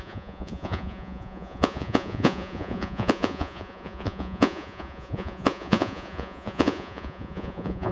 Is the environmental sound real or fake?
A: fake